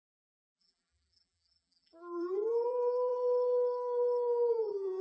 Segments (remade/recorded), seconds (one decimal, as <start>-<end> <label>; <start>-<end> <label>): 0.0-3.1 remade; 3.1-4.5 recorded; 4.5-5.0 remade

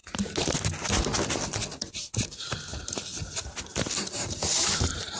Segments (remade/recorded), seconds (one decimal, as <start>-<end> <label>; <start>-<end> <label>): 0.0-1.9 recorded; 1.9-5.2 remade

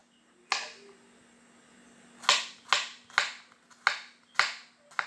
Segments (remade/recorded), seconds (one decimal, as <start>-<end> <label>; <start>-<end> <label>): 0.0-5.1 recorded